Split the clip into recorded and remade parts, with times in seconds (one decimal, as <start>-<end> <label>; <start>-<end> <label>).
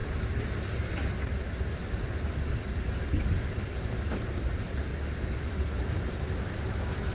0.0-7.1 recorded